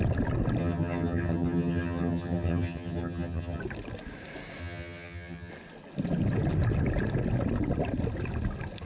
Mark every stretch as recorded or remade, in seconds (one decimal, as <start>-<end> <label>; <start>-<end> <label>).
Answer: 0.0-0.6 recorded; 0.6-3.6 remade; 3.6-4.6 recorded; 4.6-5.5 remade; 5.5-8.8 recorded